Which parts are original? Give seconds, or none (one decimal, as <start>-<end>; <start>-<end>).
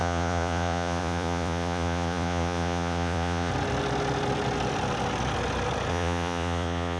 3.5-5.9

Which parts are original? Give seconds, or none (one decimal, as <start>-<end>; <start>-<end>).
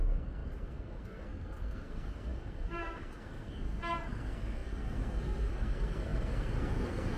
none